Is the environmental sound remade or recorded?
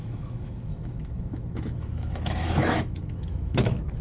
remade